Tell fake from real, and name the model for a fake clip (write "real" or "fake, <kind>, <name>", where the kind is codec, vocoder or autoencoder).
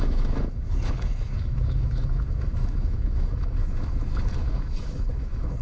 fake, autoencoder, DAC-VAE